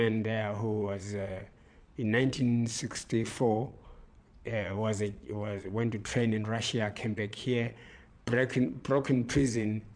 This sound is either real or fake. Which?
fake